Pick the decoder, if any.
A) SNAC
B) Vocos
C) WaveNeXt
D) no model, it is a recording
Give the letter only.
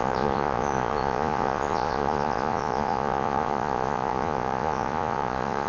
B